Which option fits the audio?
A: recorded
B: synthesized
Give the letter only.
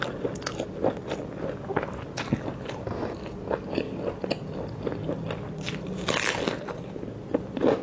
A